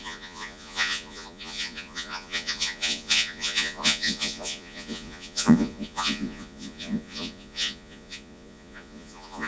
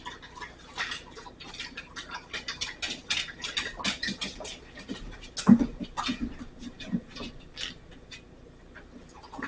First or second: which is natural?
second